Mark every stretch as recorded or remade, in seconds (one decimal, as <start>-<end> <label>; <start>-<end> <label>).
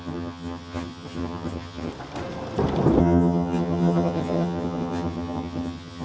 0.0-1.9 remade; 1.9-3.0 recorded; 3.0-6.0 remade